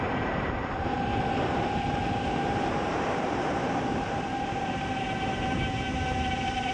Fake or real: fake